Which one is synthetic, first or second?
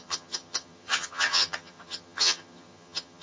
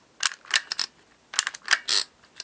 first